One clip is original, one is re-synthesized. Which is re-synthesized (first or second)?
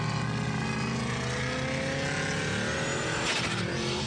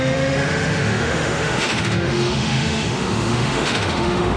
second